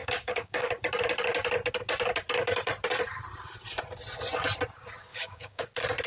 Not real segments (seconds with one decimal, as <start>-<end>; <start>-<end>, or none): 0.0-0.7; 5.1-5.6